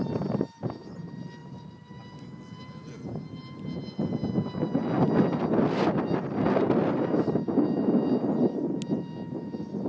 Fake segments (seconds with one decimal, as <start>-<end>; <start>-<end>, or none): 1.4-2.0